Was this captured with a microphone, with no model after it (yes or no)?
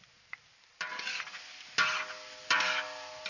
yes